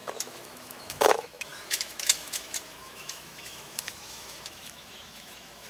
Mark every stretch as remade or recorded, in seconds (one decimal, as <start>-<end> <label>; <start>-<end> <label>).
0.0-5.7 remade